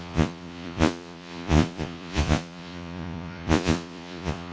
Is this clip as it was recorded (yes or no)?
no